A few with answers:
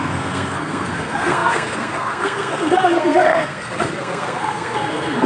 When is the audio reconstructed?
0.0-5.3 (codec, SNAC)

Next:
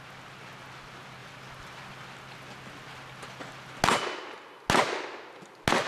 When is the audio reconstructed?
none

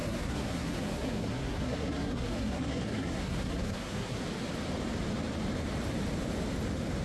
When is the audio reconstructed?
0.0-4.2 (codec, SNAC)

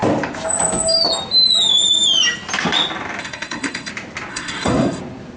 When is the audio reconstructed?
3.2-3.9 (codec, SNAC); 4.3-5.0

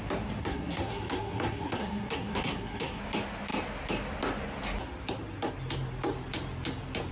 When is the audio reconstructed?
0.4-3.0 (codec, SNAC)